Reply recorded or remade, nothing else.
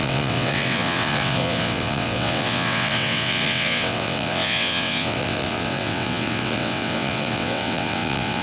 remade